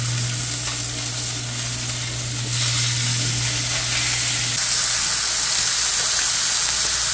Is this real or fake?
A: real